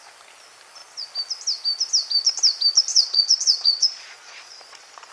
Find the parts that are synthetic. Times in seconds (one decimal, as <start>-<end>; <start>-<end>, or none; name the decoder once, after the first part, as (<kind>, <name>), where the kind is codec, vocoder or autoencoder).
2.9-5.1 (vocoder, Vocos)